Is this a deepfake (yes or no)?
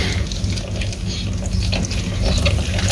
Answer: no